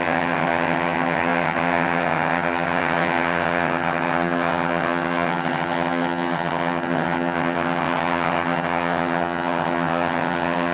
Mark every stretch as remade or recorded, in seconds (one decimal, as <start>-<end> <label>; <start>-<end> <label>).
0.0-10.7 remade